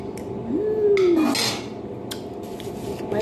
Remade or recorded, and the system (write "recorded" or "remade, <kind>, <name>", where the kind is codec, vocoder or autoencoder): recorded